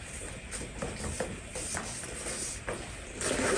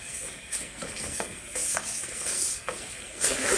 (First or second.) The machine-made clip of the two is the second